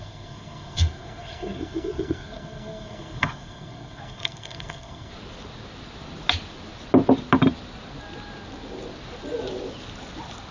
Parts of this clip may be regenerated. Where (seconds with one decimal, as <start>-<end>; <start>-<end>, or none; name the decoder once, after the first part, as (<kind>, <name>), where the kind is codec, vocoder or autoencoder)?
0.0-5.1 (codec, SNAC)